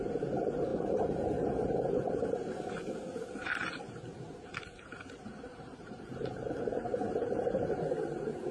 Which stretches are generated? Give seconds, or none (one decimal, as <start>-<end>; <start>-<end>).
none